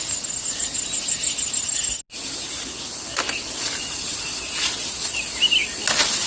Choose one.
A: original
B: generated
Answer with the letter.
A